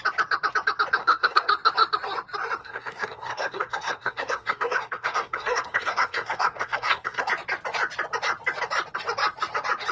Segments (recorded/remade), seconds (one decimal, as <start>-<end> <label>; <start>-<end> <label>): 0.0-1.0 recorded; 1.0-1.5 remade; 1.5-2.6 recorded; 2.6-7.3 remade; 7.3-9.9 recorded